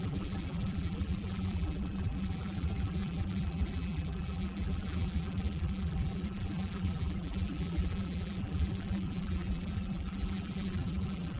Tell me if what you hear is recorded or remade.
remade